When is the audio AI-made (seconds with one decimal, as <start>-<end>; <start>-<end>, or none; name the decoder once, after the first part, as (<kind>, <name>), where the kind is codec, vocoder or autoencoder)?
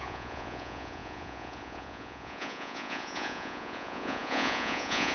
0.0-5.1 (vocoder, Vocos)